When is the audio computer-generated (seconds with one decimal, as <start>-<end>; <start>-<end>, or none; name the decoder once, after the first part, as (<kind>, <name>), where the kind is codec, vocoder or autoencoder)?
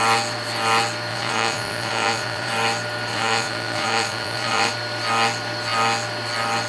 1.1-2.5 (vocoder, Vocos); 3.1-4.7